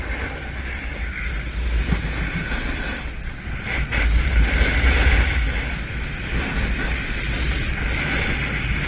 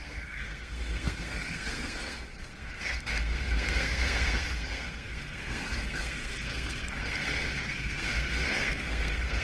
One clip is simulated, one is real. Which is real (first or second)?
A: first